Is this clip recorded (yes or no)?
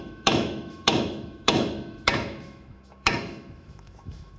no